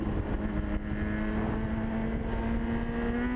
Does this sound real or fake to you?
real